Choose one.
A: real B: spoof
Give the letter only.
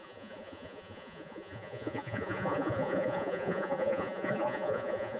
B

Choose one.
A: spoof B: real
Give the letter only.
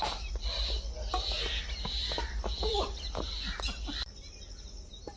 B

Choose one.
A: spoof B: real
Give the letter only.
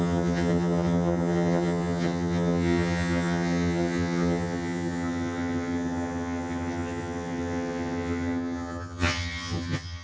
A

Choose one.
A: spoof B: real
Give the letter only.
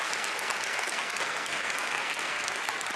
A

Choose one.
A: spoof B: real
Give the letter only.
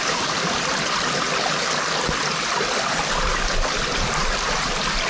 B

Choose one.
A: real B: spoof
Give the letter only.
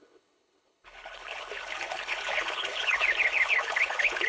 B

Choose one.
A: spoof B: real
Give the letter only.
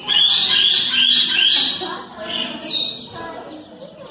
B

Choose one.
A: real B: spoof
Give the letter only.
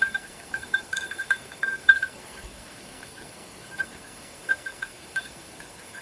B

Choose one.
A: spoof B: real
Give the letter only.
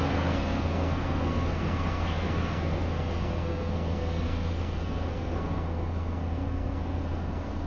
A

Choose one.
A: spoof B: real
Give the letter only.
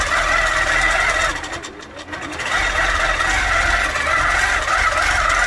B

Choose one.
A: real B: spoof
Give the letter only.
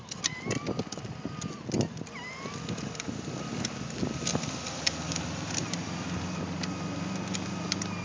A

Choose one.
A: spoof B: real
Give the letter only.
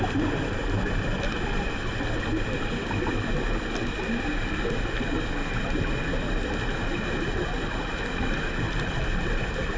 B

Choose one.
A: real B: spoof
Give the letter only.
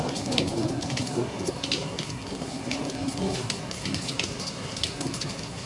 B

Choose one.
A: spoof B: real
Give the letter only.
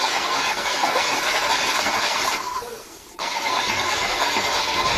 A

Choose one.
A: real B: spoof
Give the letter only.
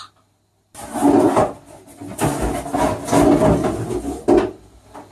A